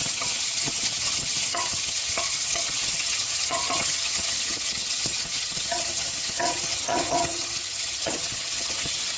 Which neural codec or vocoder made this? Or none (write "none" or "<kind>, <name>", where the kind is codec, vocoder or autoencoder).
vocoder, HiFi-GAN